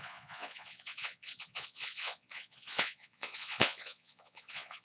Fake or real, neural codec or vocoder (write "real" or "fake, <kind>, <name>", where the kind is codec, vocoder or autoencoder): fake, vocoder, Vocos